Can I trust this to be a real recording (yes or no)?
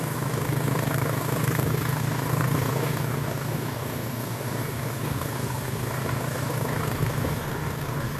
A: no